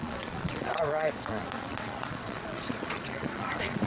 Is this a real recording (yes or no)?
no